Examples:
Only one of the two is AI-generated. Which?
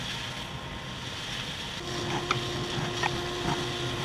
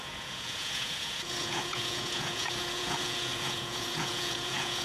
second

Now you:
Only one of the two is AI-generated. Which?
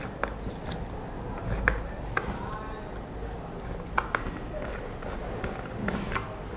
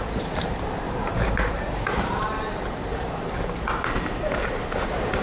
second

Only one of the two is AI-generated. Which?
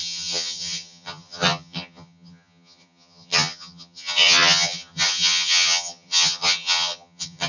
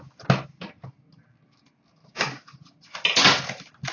first